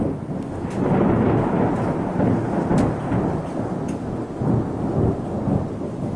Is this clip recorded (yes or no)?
yes